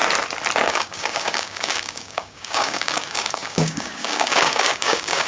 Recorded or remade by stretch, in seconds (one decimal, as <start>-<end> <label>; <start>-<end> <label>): 0.0-0.7 recorded; 0.7-5.3 remade